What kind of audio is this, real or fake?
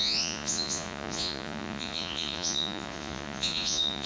fake